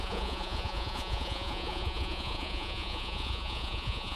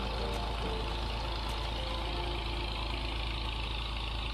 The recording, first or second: second